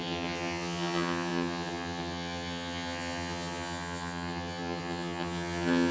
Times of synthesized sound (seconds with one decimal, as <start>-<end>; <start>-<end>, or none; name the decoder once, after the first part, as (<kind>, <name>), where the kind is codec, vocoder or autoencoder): 0.0-5.9 (vocoder, HiFi-GAN)